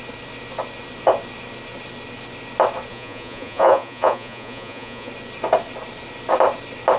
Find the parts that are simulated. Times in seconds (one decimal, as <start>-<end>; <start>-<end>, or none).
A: 2.9-5.1